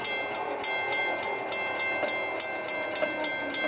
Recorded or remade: recorded